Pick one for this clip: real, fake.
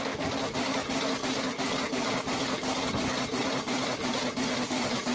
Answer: real